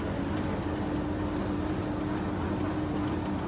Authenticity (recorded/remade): recorded